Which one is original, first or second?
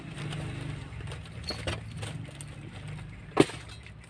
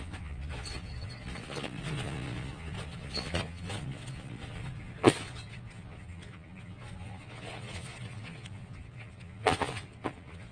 first